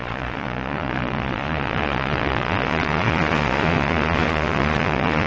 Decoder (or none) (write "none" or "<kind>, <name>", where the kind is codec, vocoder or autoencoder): vocoder, Vocos